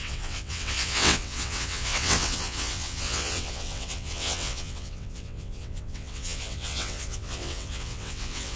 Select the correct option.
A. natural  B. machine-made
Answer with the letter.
B